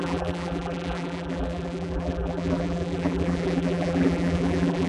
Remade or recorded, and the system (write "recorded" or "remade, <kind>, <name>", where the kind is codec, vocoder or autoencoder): remade, vocoder, BigVGAN v2